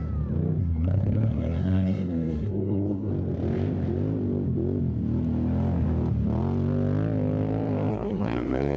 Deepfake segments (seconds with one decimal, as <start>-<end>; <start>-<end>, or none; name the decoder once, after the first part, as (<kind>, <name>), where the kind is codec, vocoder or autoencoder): 0.6-3.1 (codec, SNAC); 7.9-8.8